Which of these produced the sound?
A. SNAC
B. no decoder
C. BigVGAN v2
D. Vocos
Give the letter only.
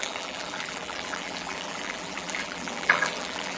C